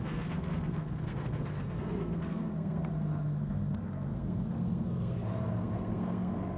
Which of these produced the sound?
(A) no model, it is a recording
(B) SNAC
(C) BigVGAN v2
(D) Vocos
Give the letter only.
B